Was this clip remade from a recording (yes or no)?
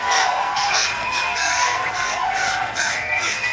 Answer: yes